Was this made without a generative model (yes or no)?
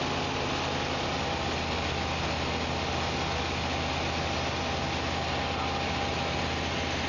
yes